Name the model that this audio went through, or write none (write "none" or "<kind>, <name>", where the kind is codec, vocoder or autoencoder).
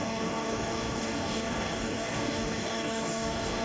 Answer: codec, DAC